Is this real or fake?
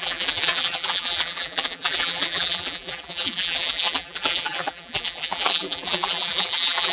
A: fake